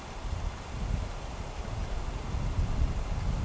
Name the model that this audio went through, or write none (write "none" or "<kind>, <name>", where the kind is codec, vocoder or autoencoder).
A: none